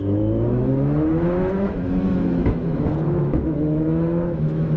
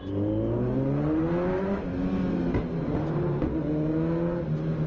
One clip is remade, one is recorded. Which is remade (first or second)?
first